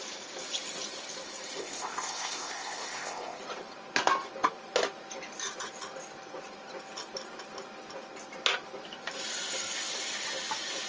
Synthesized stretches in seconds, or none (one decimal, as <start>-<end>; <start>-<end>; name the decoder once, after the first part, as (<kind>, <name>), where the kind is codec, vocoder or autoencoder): 1.6-3.4 (codec, ZipCodec)